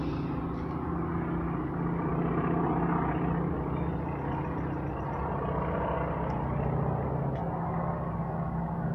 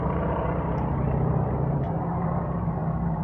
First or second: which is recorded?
first